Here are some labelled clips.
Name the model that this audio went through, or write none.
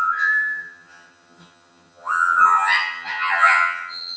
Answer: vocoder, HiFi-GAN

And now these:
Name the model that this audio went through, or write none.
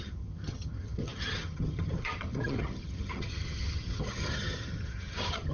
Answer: vocoder, HiFi-GAN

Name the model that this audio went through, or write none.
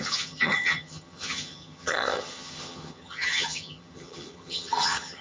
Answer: vocoder, HiFi-GAN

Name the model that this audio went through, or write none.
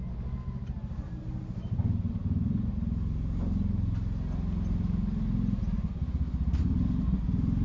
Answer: none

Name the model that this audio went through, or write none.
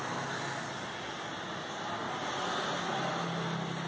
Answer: none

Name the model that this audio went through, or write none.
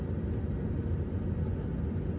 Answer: none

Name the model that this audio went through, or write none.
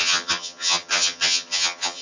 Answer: vocoder, HiFi-GAN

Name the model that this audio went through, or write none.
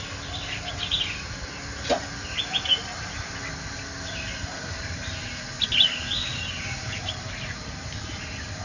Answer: none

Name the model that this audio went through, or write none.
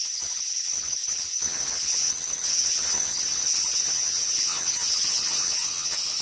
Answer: vocoder, HiFi-GAN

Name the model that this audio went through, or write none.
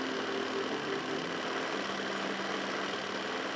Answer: none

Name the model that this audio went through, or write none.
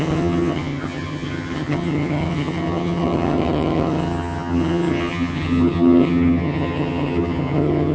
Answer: vocoder, HiFi-GAN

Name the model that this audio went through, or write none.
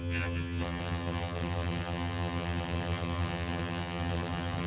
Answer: vocoder, HiFi-GAN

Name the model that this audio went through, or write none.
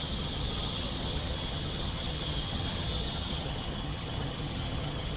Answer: vocoder, HiFi-GAN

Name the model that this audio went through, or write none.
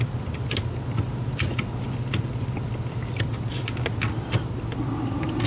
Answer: none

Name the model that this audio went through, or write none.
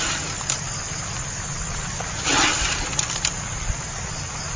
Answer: none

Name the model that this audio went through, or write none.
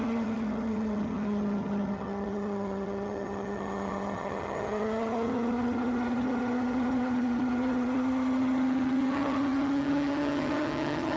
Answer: vocoder, HiFi-GAN